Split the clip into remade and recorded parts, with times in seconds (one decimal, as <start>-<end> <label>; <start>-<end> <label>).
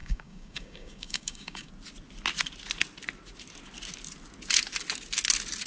0.0-1.7 remade; 1.7-5.7 recorded